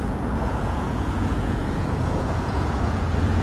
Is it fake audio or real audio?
fake